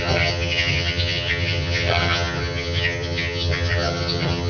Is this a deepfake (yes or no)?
yes